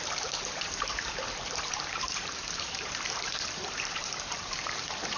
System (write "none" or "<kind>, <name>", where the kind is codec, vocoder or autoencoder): vocoder, BigVGAN v2